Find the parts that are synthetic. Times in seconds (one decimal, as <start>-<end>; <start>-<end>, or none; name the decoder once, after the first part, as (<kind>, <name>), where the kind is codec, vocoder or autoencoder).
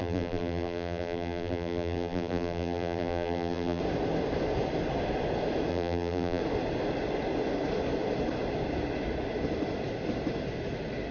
0.0-3.8 (vocoder, BigVGAN v2); 5.7-6.4